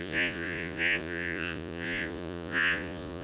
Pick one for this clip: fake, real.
fake